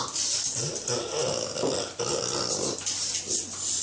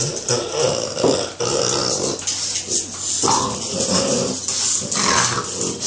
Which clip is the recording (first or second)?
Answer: second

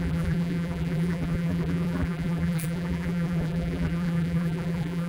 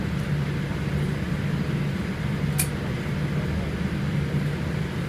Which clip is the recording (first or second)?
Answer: second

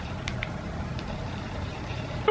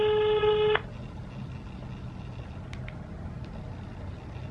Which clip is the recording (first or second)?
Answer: second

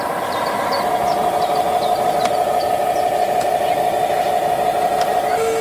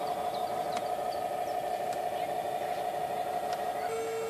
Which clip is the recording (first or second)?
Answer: second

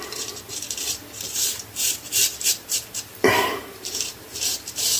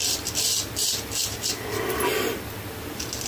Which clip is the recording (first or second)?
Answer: second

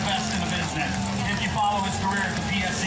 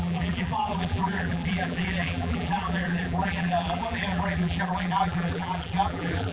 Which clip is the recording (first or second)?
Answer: first